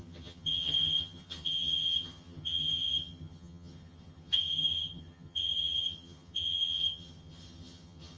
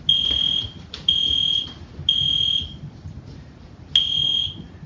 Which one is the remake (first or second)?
first